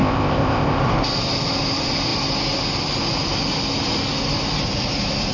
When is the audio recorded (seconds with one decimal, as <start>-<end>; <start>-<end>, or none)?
0.8-5.3